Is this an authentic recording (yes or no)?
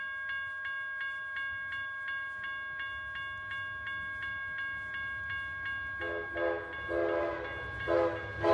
yes